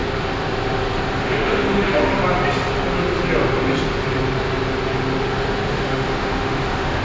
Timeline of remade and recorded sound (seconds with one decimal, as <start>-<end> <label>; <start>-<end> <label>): 0.0-1.2 recorded; 1.2-2.1 remade; 2.1-5.7 recorded; 5.7-7.0 remade